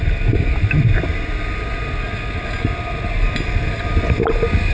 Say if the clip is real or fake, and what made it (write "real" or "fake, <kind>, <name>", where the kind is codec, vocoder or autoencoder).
real